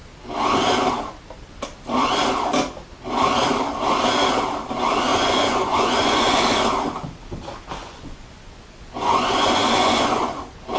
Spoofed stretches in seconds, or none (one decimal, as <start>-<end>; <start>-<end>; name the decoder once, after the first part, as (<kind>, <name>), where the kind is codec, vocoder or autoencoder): 5.1-6.4 (vocoder, Vocos); 7.8-10.4